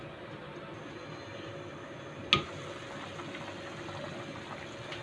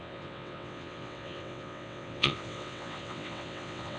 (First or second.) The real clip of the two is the first